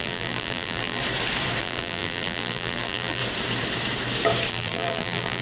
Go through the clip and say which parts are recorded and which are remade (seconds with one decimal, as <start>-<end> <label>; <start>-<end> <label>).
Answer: 0.0-1.0 remade; 1.0-1.6 recorded; 1.6-3.2 remade; 3.2-4.5 recorded; 4.5-5.4 remade